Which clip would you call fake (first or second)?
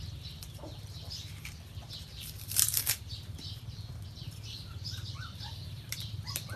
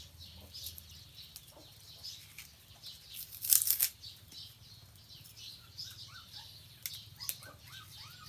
first